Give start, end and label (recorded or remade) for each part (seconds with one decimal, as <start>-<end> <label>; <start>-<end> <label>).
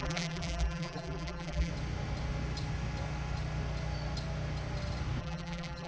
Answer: 0.0-1.7 remade; 1.7-5.2 recorded; 5.2-5.9 remade